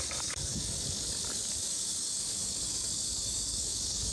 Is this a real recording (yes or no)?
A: no